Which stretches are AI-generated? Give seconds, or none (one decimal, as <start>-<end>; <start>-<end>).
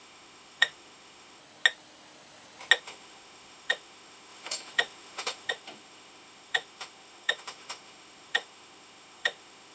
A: 0.0-1.4; 2.8-9.7